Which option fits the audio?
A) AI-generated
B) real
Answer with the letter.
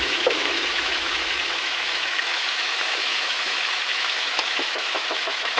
A